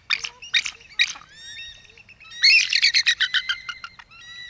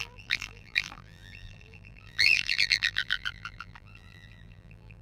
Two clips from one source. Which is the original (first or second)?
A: first